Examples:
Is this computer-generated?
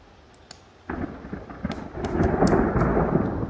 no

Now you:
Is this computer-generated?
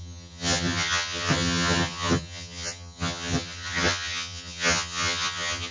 yes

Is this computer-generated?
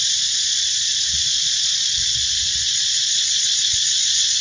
yes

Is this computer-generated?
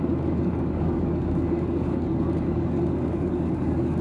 yes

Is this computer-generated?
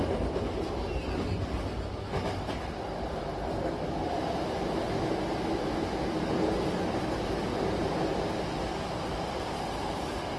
no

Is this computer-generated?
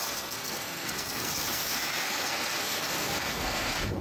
yes